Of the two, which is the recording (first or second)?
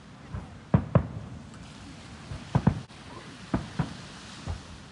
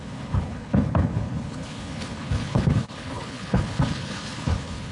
first